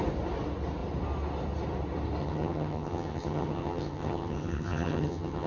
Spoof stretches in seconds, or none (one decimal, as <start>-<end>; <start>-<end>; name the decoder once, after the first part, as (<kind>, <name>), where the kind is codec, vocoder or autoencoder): 2.2-5.5 (vocoder, HiFi-GAN)